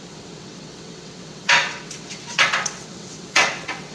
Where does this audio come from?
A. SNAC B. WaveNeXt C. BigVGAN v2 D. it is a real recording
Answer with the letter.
B